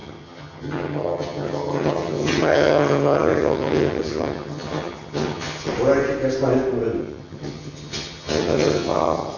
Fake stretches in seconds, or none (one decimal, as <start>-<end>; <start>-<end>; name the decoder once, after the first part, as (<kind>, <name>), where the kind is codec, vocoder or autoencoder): 0.0-5.7 (vocoder, HiFi-GAN); 7.0-9.4